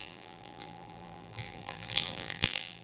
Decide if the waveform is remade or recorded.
remade